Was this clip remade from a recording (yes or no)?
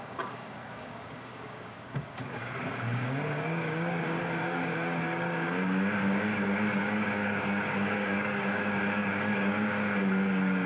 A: yes